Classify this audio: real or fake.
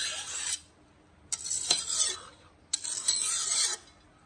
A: real